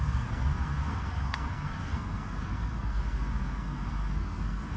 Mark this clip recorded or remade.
remade